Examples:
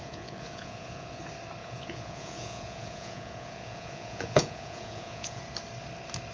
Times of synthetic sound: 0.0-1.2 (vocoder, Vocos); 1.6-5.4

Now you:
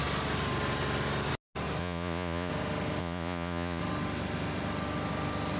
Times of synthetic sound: 1.8-2.5 (vocoder, Vocos); 3.0-3.8

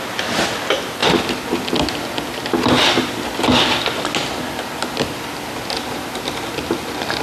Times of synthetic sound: none

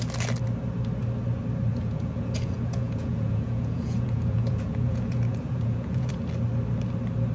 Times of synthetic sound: 1.7-6.1 (vocoder, Vocos)